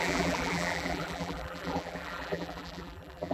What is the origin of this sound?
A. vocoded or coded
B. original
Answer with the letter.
A